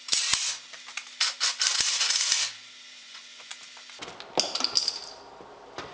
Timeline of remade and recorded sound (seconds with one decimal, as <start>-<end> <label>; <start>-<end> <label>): 0.0-3.0 recorded; 3.0-3.6 remade; 3.6-5.9 recorded